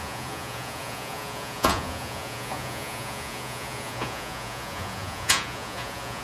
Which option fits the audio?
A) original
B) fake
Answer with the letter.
B